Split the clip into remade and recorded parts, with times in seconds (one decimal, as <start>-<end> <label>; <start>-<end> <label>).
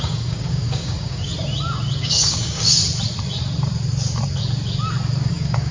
0.0-1.3 remade; 1.3-2.0 recorded; 2.0-2.8 remade; 2.8-5.3 recorded; 5.3-5.7 remade